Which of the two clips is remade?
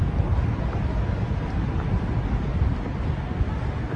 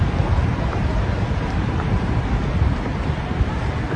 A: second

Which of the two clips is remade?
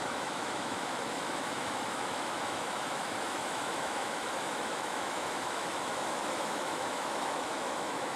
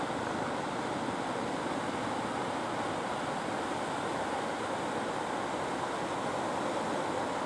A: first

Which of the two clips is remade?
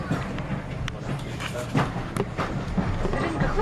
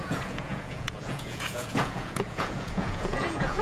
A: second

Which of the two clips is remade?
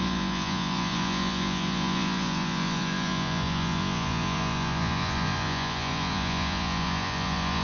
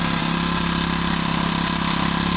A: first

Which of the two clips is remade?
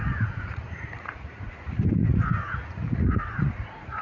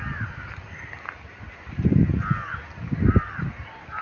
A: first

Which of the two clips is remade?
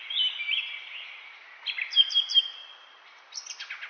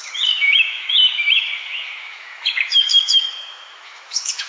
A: second